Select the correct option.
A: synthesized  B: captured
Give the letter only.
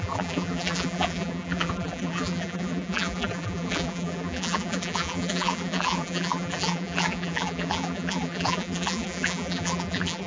A